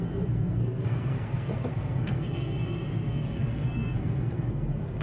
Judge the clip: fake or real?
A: fake